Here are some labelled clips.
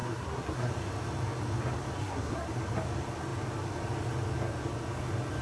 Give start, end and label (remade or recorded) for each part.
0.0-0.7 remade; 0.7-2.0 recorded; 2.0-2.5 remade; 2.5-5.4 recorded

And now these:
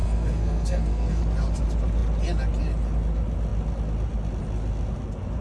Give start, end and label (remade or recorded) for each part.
0.0-1.2 remade; 1.2-5.4 recorded

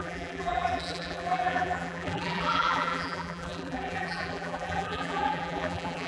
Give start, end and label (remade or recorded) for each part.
0.0-6.1 remade

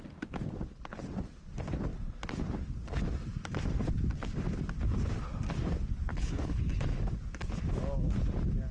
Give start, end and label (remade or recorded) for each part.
0.0-6.1 recorded; 6.1-7.0 remade; 7.0-8.7 recorded